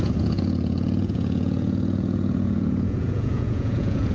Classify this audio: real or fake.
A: fake